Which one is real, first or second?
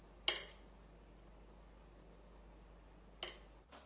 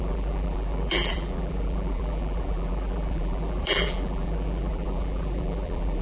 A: first